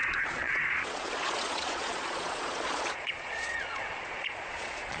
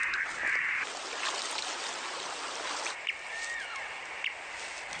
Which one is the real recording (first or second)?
second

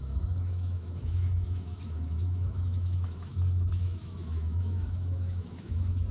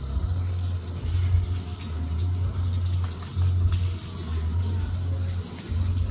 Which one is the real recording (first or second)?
second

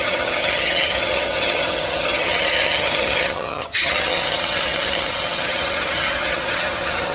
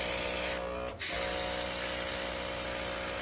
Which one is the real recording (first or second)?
second